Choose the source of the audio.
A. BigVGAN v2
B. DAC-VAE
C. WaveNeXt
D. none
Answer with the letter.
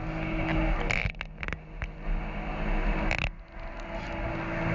D